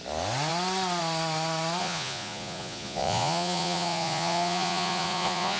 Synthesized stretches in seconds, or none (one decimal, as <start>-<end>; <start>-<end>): 1.8-5.6